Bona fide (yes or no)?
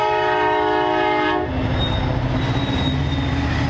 yes